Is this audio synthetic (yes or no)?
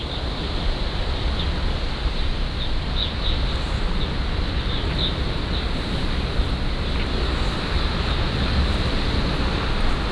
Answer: no